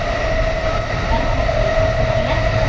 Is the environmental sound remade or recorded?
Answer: recorded